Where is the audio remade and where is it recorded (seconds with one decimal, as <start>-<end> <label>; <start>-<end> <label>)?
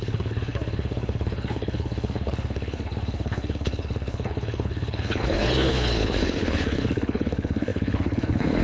0.0-8.6 remade